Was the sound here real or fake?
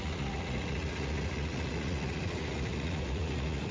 fake